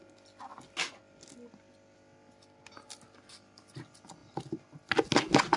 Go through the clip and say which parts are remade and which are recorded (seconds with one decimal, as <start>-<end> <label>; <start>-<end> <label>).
0.0-5.6 recorded